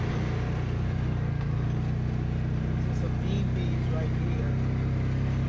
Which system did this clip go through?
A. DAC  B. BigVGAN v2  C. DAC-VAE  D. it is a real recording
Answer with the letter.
D